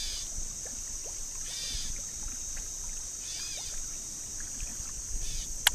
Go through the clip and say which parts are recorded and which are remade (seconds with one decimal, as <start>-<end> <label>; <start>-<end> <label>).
0.0-5.7 recorded